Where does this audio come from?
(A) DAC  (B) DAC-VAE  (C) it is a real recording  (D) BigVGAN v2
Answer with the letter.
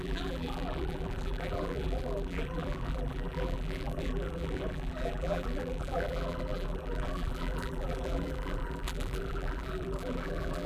D